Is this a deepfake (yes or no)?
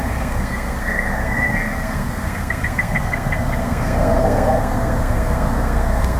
yes